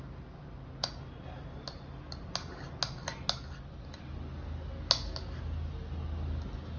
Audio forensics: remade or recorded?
recorded